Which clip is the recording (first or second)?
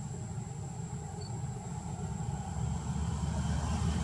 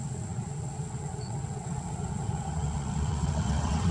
first